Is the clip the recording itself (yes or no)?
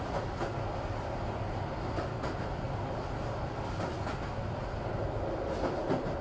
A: yes